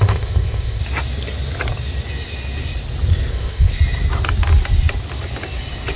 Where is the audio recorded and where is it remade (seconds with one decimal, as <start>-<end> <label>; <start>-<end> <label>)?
0.0-0.8 remade; 0.8-3.3 recorded; 3.3-3.7 remade; 3.7-6.0 recorded